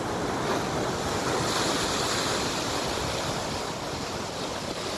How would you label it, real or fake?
real